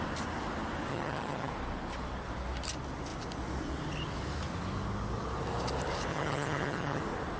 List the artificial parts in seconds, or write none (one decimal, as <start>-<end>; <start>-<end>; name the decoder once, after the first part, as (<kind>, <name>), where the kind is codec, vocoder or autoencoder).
0.9-1.5 (vocoder, HiFi-GAN); 6.1-7.0